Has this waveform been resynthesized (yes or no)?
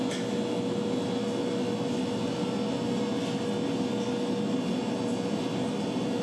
no